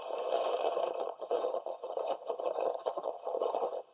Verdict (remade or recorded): remade